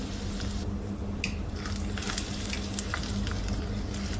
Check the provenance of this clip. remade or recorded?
recorded